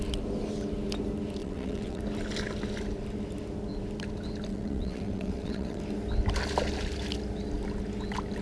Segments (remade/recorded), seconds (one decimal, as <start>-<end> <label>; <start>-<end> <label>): 0.0-1.4 recorded; 1.4-2.0 remade; 2.0-4.5 recorded; 4.5-5.8 remade; 5.8-8.4 recorded

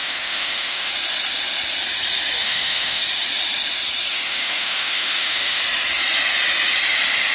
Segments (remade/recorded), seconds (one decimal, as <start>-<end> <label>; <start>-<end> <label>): 0.0-0.9 remade; 0.9-2.4 recorded; 2.4-3.0 remade; 3.0-4.1 recorded; 4.1-5.6 remade; 5.6-7.3 recorded

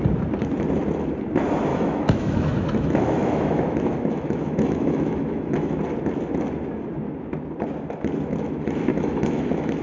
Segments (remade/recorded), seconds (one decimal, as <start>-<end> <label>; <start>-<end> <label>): 0.0-1.7 recorded; 1.7-5.8 remade; 5.8-8.9 recorded; 8.9-9.8 remade

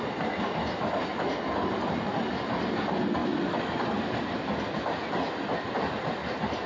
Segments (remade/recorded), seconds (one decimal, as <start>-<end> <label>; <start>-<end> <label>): 0.0-6.7 recorded